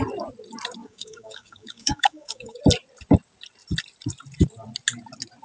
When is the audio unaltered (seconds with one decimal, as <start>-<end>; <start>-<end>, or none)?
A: 0.0-0.8; 2.6-5.4

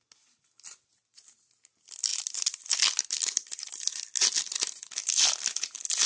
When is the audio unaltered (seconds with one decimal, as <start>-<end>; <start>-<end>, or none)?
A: 0.0-6.1

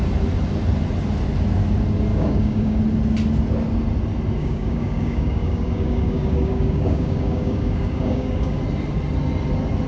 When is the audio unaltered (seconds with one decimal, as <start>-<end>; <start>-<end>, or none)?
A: 0.0-2.1; 2.8-4.4; 8.6-9.9

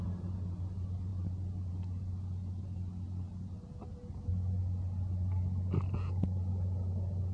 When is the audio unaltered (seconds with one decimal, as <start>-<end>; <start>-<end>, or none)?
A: 0.0-7.3

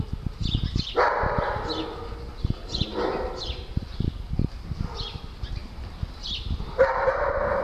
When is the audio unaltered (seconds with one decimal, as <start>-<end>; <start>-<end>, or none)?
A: 0.0-7.6

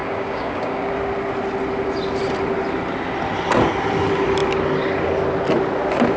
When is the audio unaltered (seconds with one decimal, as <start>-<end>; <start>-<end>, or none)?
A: 0.9-6.2

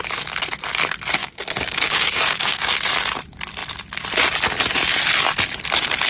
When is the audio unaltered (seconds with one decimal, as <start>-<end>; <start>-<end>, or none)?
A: 0.0-1.2; 2.8-6.1

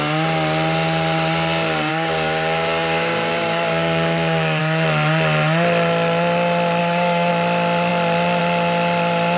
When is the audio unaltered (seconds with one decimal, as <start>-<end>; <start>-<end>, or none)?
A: 0.0-1.9; 4.6-6.8; 7.3-9.4